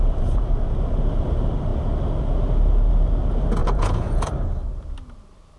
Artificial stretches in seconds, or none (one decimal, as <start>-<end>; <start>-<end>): 3.6-4.3